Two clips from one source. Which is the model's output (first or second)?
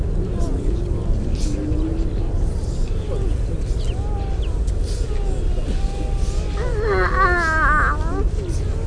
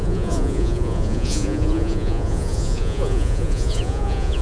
second